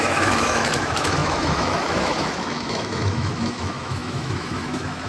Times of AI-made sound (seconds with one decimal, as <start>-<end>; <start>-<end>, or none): 0.0-5.1